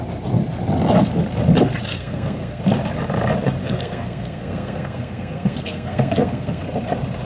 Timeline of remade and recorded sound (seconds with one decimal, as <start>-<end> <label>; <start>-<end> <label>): 0.0-1.9 recorded; 1.9-2.6 remade; 2.6-3.6 recorded; 3.6-6.6 remade; 6.6-7.2 recorded